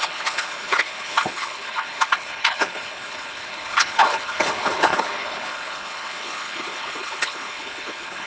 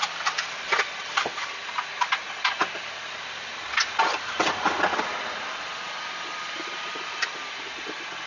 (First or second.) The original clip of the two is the second